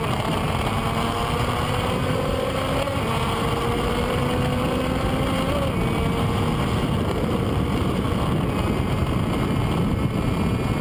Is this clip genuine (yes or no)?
yes